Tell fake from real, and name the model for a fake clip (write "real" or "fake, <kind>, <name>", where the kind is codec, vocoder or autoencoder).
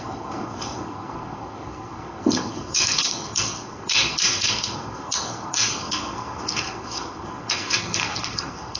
fake, codec, SNAC